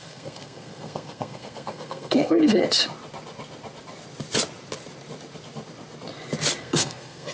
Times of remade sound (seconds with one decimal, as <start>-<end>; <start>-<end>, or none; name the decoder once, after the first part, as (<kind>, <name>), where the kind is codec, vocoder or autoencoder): 0.0-2.6 (codec, SNAC); 6.6-7.3